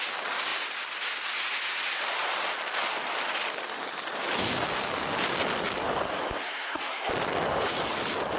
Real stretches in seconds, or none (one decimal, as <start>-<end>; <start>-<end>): 0.0-6.4; 7.1-8.4